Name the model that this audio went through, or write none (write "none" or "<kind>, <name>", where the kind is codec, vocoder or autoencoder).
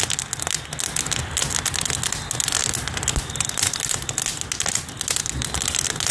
none